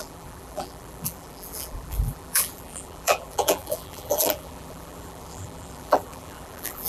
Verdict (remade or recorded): remade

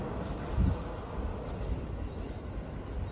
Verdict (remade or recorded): recorded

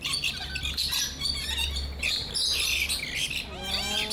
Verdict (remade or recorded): recorded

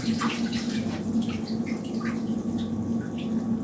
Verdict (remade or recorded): recorded